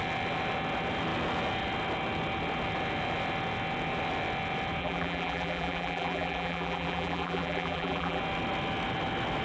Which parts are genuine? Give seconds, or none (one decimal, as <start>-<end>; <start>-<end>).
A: 0.0-4.8; 8.2-9.4